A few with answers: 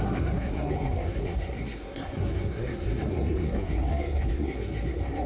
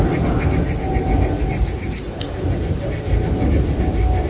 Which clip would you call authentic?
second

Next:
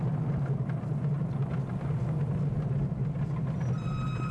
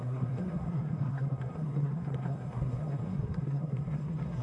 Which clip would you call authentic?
first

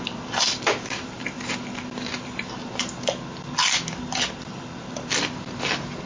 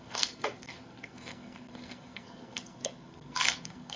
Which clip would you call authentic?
first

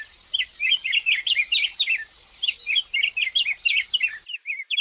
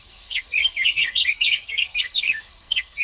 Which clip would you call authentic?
first